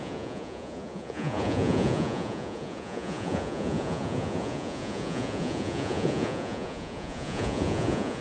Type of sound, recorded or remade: remade